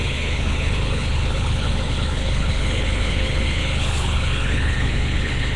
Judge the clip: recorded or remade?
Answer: remade